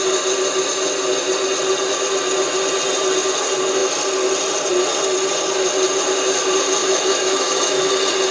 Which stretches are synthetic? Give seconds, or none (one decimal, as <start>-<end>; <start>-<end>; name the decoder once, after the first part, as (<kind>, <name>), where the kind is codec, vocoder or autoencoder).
6.8-7.9 (autoencoder, DAC-VAE)